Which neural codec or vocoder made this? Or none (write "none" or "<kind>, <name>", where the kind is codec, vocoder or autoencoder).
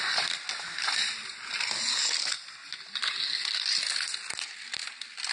none